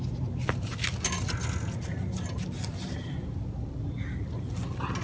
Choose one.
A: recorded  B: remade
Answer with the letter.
A